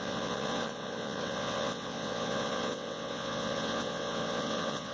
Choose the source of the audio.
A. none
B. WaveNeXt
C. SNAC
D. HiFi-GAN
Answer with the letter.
B